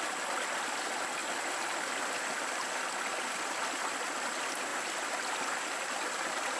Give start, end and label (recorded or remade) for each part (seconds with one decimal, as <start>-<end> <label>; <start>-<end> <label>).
0.0-6.6 recorded